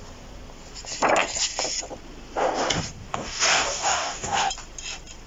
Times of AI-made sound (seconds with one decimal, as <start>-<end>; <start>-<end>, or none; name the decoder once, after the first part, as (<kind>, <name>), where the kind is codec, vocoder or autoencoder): 3.1-4.5 (codec, DAC)